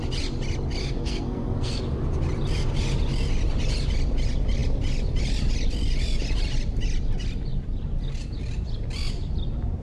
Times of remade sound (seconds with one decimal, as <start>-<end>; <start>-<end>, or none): 0.8-1.8